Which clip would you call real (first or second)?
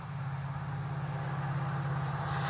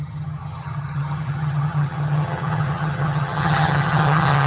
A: first